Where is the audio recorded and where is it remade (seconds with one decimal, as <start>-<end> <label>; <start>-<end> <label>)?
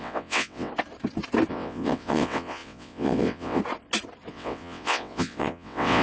0.0-0.7 remade; 0.7-1.5 recorded; 1.5-3.6 remade; 3.6-4.3 recorded; 4.3-6.0 remade